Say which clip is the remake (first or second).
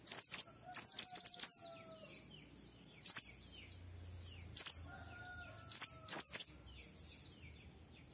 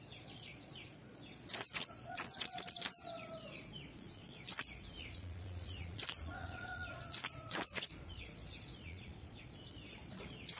second